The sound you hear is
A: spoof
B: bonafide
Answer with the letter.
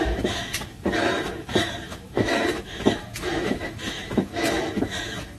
A